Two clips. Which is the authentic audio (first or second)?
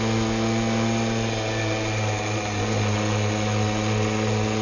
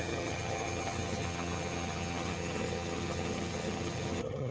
first